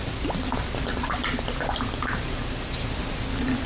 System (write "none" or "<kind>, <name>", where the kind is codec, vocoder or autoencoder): none